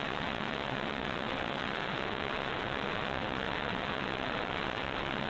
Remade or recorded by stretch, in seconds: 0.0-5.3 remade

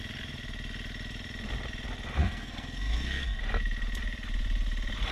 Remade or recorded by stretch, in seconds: 0.0-2.2 recorded; 2.2-3.4 remade; 3.4-5.1 recorded

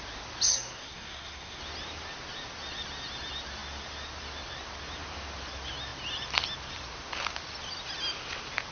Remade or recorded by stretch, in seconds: 0.0-0.5 recorded; 0.5-1.6 remade; 1.6-8.7 recorded

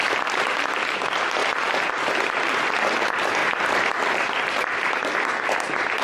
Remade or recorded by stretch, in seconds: 0.0-6.0 recorded

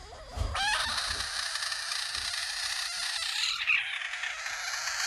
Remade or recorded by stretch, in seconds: 0.0-1.6 remade; 1.6-2.4 recorded; 2.4-3.8 remade; 3.8-5.1 recorded